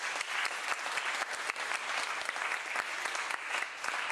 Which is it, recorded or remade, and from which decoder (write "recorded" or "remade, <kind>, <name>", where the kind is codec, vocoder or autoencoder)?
recorded